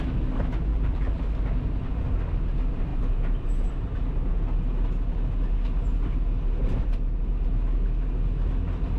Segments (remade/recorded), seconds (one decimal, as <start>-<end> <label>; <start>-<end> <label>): 0.0-0.7 recorded; 0.7-1.2 remade; 1.2-9.0 recorded